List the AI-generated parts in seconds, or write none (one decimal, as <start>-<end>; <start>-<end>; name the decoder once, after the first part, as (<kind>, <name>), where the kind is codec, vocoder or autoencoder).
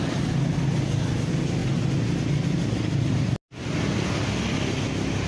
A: none